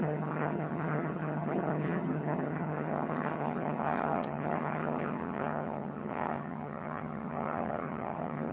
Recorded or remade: remade